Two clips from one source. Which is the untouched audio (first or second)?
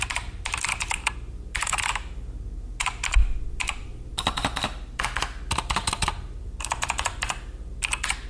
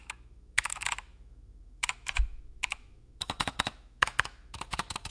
first